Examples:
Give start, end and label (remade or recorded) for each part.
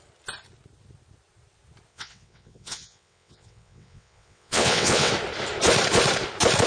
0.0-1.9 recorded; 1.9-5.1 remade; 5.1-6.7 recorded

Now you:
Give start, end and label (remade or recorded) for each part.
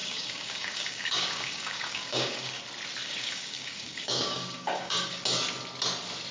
0.0-2.6 remade; 2.6-3.0 recorded; 3.0-5.2 remade; 5.2-6.3 recorded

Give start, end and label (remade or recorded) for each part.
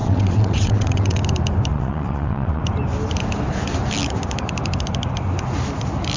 0.0-1.2 remade; 1.2-1.7 recorded; 1.7-2.6 remade; 2.6-6.2 recorded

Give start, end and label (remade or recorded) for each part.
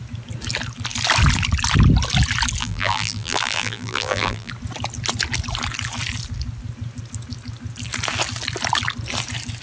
0.0-2.6 recorded; 2.6-4.5 remade; 4.5-9.6 recorded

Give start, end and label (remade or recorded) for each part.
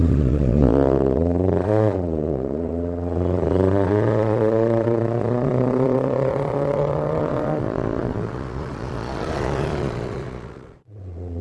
0.0-11.4 remade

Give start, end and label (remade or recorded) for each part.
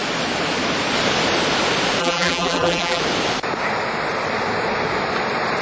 0.0-2.0 recorded; 2.0-3.0 remade; 3.0-5.6 recorded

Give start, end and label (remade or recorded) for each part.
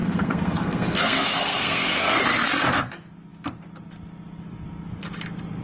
0.0-2.2 remade; 2.2-5.6 recorded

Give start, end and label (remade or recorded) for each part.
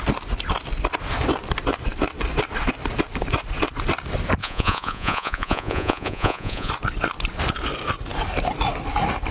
0.0-4.4 recorded; 4.4-6.7 remade; 6.7-9.3 recorded